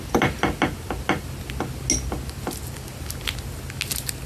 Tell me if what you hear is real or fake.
real